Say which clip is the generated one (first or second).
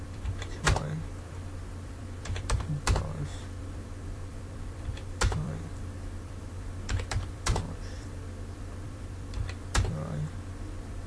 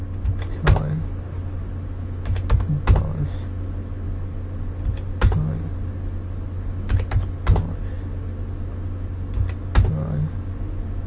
first